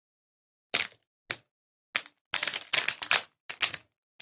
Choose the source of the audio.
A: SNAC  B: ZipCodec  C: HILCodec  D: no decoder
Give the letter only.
D